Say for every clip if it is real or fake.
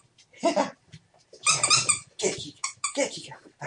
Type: real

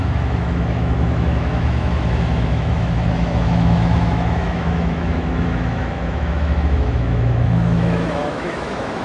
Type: fake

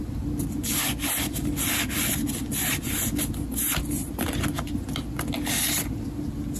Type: real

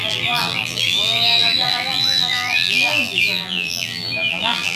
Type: fake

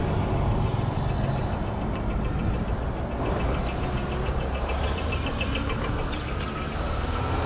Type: real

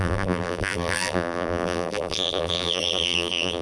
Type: fake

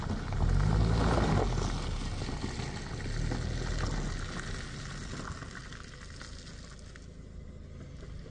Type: real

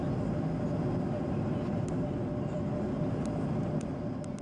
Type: real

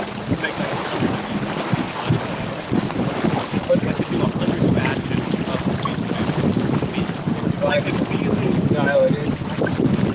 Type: real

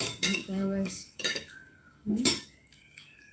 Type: fake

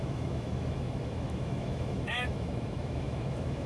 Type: fake